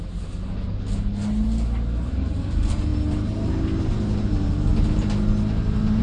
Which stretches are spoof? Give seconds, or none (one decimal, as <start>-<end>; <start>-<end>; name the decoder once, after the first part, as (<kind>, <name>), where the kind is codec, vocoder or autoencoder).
none